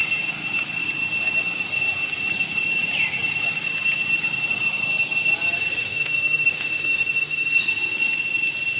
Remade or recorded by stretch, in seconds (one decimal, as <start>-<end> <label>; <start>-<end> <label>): 0.0-5.8 recorded; 5.8-7.6 remade; 7.6-8.8 recorded